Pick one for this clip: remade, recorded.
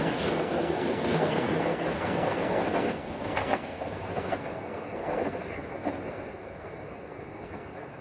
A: remade